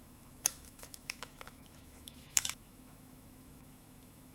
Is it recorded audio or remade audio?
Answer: remade